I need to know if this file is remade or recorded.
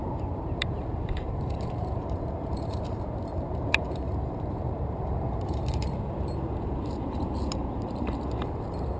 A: remade